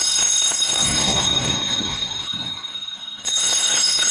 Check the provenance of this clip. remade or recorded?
remade